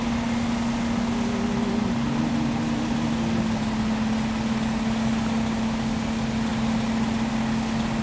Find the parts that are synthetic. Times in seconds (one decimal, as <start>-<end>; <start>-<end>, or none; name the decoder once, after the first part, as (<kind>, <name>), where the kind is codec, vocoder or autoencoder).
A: none